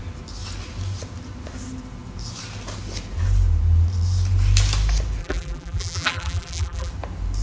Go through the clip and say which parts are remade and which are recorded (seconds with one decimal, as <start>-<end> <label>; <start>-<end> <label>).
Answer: 0.0-5.2 recorded; 5.2-6.9 remade; 6.9-7.4 recorded